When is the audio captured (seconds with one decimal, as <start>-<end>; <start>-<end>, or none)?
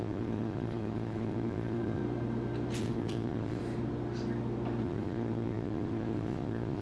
2.0-2.8; 3.6-4.8